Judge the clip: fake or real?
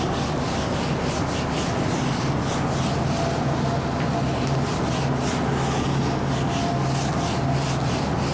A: real